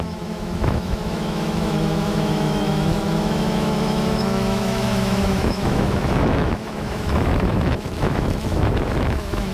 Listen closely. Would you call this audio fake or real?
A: fake